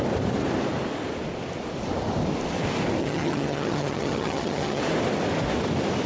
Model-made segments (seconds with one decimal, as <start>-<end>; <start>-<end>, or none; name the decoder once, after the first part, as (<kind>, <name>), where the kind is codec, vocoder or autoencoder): 3.0-4.8 (vocoder, HiFi-GAN)